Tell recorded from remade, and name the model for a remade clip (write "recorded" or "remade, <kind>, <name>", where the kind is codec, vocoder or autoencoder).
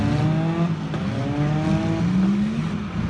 recorded